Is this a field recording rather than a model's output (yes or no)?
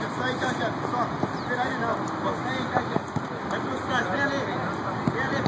yes